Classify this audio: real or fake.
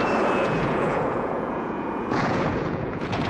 fake